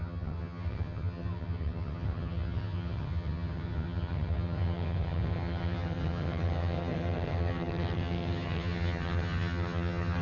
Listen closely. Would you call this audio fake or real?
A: fake